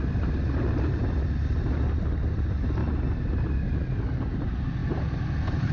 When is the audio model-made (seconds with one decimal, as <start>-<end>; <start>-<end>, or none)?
none